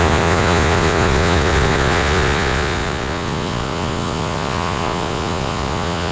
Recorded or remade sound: remade